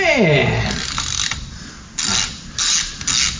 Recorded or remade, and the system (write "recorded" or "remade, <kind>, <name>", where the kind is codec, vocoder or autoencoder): recorded